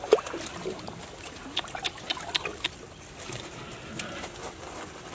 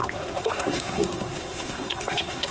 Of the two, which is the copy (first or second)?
second